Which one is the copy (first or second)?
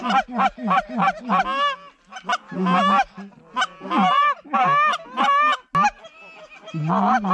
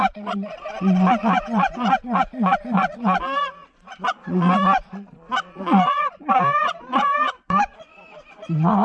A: second